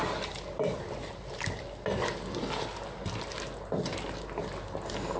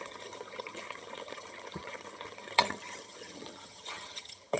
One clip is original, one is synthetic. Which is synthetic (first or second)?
second